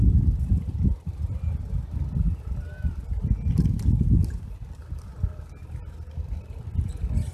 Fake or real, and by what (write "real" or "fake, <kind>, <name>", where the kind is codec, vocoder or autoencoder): real